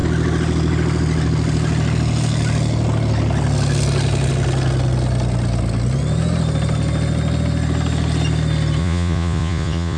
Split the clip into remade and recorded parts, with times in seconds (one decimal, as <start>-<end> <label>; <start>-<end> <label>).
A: 0.0-8.8 recorded; 8.8-10.0 remade